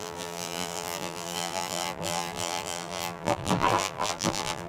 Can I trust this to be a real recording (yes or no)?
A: no